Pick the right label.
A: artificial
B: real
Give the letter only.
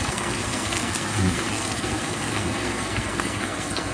A